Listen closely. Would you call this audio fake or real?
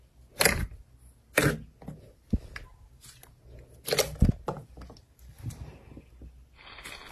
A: real